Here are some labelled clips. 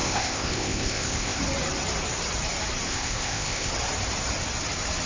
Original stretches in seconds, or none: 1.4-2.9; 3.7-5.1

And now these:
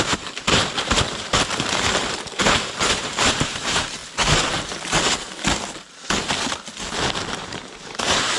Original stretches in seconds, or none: 2.4-3.0; 4.0-7.3

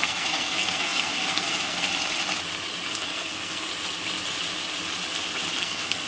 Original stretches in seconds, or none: 1.9-2.9; 3.7-5.6

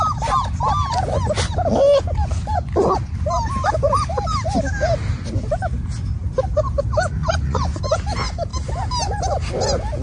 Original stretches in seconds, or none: 0.0-7.2; 7.8-10.0

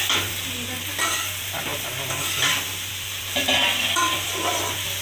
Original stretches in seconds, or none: 1.7-2.9